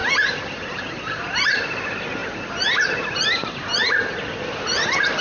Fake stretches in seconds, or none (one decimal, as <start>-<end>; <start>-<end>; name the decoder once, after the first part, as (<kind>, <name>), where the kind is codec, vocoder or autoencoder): 0.0-0.8 (vocoder, BigVGAN v2)